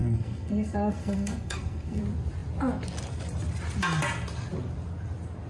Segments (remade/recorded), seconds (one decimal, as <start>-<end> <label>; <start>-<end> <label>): 0.0-2.0 remade; 2.0-5.5 recorded